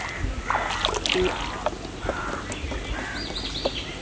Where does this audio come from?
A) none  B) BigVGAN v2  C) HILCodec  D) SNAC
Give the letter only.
A